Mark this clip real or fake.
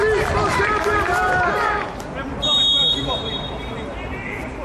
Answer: fake